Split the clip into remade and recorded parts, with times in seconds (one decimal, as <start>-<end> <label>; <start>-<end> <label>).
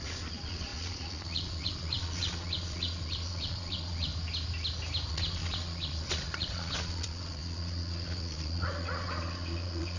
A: 0.0-4.1 remade; 4.1-5.1 recorded; 5.1-10.0 remade